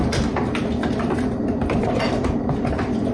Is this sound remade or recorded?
remade